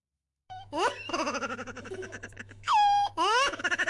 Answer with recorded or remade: remade